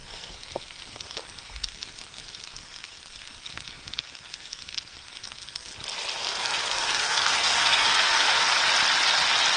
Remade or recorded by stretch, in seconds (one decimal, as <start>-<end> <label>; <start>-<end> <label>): 0.0-5.7 remade; 5.7-6.2 recorded; 6.2-8.5 remade; 8.5-9.6 recorded

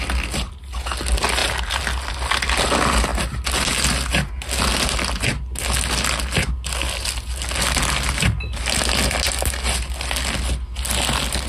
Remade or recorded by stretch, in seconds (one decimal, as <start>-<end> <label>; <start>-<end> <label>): 0.0-11.5 recorded